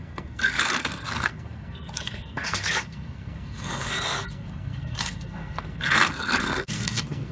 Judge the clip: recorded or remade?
remade